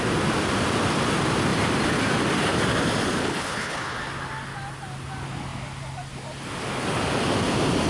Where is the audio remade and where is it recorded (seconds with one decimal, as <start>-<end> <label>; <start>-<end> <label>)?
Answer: 0.0-3.2 recorded; 3.2-4.0 remade; 4.0-7.9 recorded